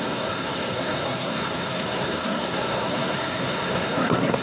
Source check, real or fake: fake